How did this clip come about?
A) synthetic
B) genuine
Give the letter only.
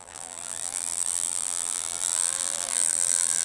A